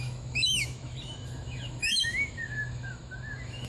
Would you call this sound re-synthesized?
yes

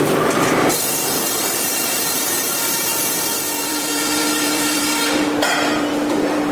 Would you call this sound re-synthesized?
yes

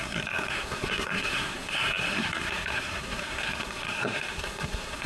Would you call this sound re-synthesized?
yes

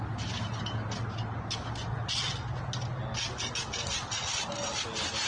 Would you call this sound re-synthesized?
no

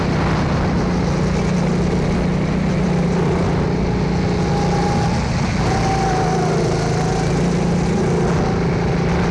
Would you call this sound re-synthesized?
no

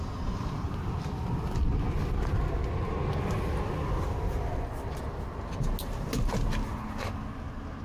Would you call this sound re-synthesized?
no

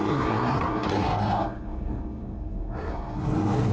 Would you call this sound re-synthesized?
yes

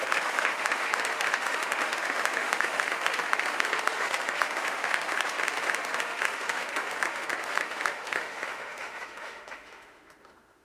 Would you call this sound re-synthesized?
yes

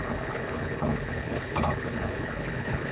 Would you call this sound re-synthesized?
yes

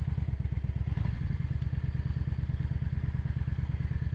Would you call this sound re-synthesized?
no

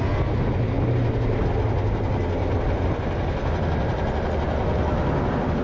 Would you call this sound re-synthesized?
no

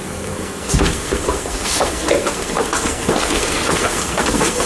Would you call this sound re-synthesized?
yes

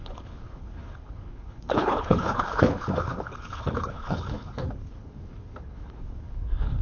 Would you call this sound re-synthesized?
yes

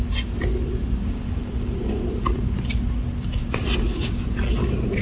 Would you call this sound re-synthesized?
no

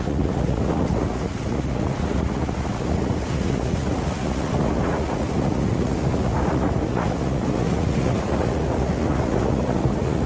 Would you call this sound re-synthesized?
yes